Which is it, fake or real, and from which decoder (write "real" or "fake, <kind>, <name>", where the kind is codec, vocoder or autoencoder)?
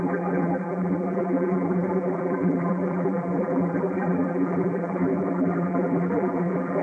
fake, vocoder, BigVGAN v2